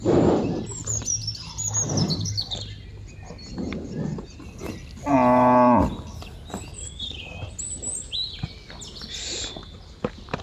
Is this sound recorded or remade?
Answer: recorded